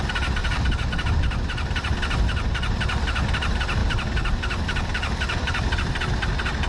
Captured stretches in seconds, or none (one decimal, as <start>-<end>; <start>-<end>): 0.0-0.4; 1.1-3.8